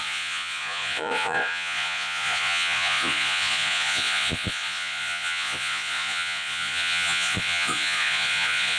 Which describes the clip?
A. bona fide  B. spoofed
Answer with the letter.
B